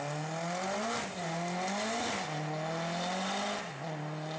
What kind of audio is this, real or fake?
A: real